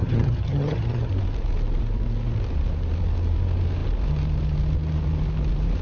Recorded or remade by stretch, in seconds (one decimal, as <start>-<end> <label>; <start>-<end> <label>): 0.0-1.1 remade; 1.1-5.8 recorded